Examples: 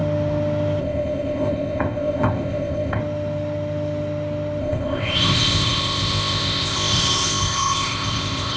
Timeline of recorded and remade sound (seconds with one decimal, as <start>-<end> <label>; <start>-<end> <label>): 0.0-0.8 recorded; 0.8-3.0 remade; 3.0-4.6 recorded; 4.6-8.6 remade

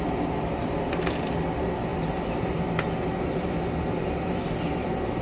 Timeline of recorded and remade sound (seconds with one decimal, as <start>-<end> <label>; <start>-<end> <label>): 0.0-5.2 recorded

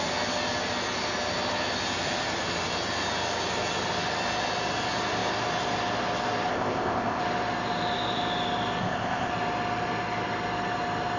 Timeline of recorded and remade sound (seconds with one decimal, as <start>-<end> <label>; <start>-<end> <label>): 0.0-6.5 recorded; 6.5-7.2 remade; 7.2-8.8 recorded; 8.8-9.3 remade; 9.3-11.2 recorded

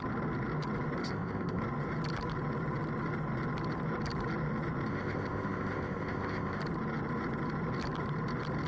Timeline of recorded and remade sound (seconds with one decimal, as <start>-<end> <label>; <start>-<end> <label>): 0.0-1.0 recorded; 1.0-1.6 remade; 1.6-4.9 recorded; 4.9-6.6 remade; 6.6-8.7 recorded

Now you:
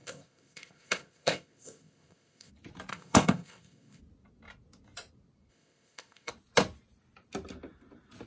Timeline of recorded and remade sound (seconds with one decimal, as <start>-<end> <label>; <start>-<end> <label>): 0.0-2.5 remade; 2.5-2.9 recorded; 2.9-4.0 remade; 4.0-5.5 recorded; 5.5-6.3 remade; 6.3-8.3 recorded